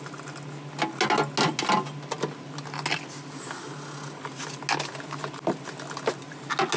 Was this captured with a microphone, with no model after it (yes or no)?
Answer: yes